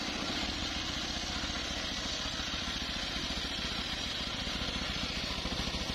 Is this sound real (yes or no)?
yes